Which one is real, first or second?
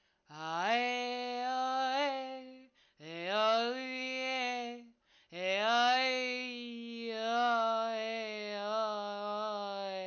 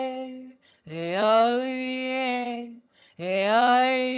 first